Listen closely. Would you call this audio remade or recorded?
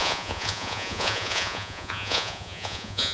remade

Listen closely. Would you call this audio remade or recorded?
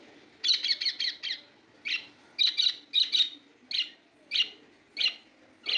recorded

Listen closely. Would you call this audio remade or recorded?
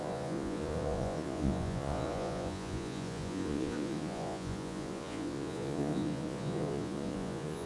remade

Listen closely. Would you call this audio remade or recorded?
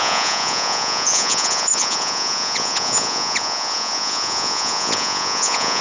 remade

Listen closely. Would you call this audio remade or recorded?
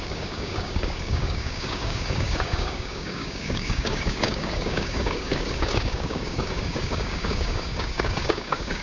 remade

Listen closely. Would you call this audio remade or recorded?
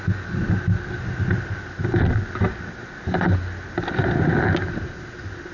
recorded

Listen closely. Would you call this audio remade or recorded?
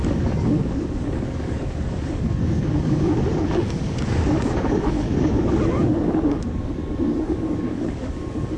remade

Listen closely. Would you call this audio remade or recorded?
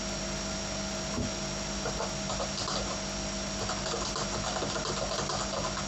recorded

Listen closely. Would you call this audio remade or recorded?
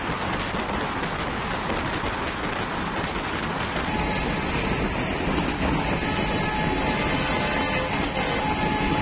recorded